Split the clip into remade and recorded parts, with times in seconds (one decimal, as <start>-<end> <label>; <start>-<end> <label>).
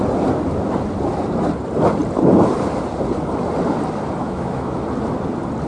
0.0-4.2 recorded; 4.2-4.8 remade; 4.8-5.7 recorded